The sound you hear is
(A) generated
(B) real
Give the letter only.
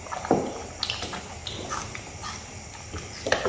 B